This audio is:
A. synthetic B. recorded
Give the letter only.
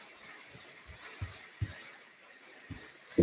A